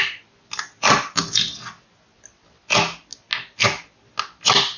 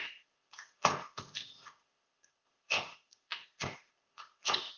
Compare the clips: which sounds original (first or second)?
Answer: first